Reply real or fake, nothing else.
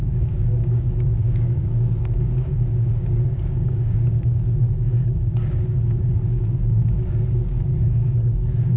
fake